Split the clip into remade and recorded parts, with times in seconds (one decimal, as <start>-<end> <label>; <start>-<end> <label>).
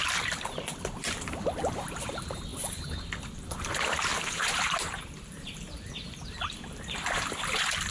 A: 0.0-2.5 remade; 2.5-3.3 recorded; 3.3-4.1 remade; 4.1-5.0 recorded; 5.0-7.9 remade